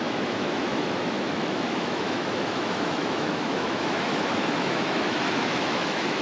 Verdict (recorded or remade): remade